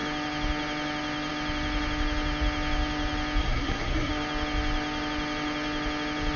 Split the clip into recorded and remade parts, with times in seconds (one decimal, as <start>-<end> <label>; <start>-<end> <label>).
0.0-3.4 recorded; 3.4-4.1 remade; 4.1-6.4 recorded